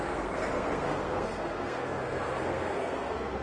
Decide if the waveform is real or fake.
fake